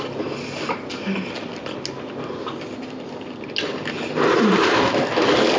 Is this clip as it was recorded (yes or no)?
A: yes